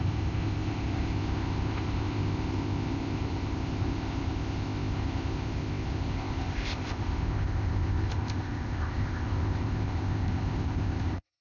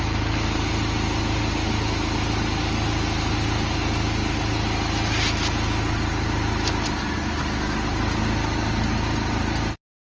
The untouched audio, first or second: second